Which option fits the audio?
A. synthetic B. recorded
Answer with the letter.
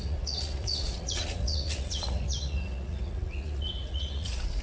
A